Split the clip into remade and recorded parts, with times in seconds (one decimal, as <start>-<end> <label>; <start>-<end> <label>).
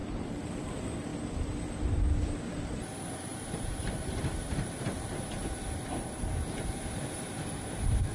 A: 0.0-1.1 remade; 1.1-2.2 recorded; 2.2-8.1 remade